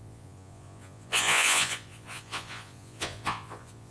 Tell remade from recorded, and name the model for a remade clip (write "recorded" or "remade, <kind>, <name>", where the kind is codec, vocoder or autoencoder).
remade, vocoder, Vocos